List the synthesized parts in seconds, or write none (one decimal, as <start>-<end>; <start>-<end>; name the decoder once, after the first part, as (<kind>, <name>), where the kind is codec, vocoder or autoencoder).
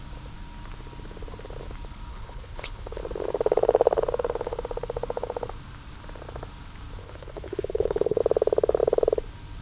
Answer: 2.1-3.0 (codec, HILCodec); 7.0-8.2